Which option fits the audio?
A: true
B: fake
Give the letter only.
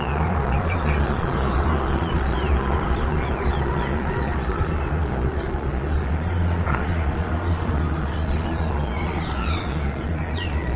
B